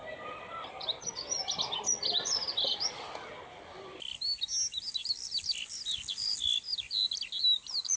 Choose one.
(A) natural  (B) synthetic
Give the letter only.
A